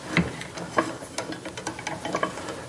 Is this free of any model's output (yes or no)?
yes